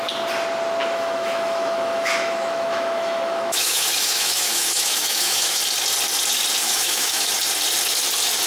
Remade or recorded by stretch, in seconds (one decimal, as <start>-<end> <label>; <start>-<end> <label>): 0.0-0.8 recorded; 0.8-5.6 remade; 5.6-6.6 recorded; 6.6-7.3 remade; 7.3-8.5 recorded